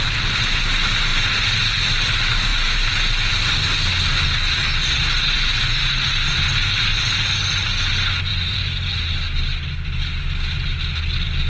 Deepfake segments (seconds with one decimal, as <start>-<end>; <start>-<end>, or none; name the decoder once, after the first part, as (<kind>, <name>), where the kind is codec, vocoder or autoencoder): 1.1-1.8 (vocoder, BigVGAN v2); 2.5-3.3; 8.3-8.9